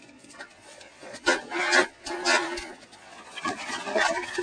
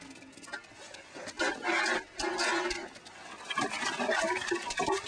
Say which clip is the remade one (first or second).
first